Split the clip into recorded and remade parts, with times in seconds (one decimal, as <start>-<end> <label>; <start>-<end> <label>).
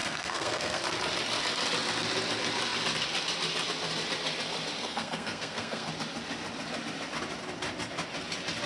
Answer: 0.0-0.8 remade; 0.8-4.8 recorded; 4.8-5.9 remade; 5.9-8.7 recorded